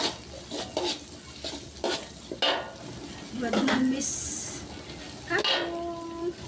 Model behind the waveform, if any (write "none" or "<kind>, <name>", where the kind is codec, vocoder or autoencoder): none